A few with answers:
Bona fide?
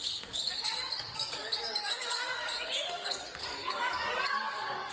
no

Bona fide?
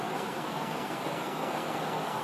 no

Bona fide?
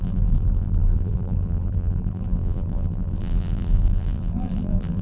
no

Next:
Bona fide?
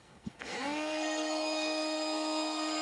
no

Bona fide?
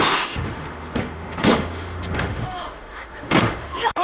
no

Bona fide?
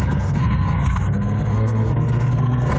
no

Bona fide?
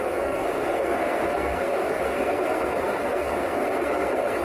no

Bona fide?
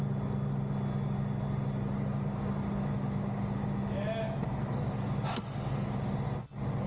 yes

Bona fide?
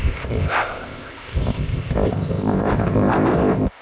no